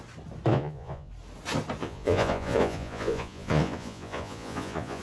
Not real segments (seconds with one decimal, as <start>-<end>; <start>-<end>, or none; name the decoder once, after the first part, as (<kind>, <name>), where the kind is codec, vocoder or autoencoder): 0.5-1.1 (vocoder, Vocos); 1.8-5.0